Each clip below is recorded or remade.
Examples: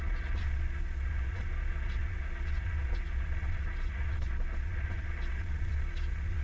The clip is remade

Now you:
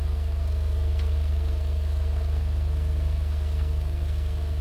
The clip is remade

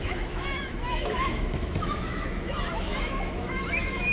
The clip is remade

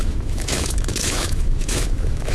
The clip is remade